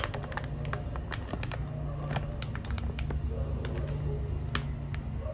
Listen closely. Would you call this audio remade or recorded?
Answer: recorded